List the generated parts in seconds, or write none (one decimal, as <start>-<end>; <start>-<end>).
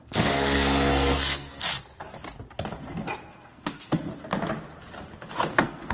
0.0-1.7; 3.5-4.1; 5.5-5.9